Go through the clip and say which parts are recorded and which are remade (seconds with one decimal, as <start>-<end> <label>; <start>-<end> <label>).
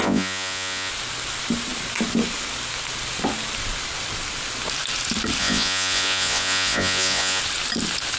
0.0-0.9 remade; 0.9-5.4 recorded; 5.4-7.4 remade; 7.4-8.2 recorded